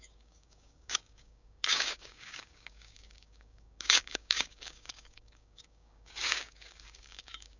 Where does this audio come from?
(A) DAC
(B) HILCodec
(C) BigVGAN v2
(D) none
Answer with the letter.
A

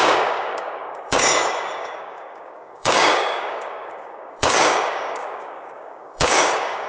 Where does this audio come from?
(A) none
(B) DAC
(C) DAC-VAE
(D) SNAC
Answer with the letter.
B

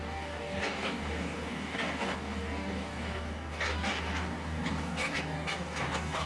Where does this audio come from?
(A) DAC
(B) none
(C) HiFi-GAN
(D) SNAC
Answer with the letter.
A